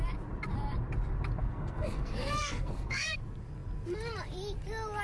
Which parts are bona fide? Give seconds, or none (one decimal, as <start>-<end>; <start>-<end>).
0.0-1.4; 3.2-5.0